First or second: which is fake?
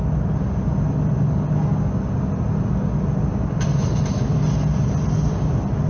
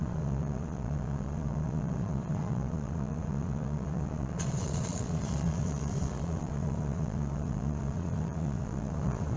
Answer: second